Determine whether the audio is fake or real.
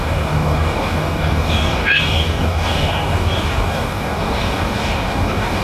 fake